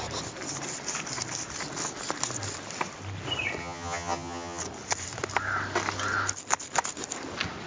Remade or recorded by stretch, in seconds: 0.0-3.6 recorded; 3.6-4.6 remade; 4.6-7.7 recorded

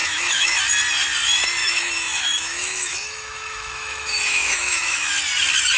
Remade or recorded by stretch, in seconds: 0.0-0.6 remade; 0.6-1.6 recorded; 1.6-5.1 remade; 5.1-5.8 recorded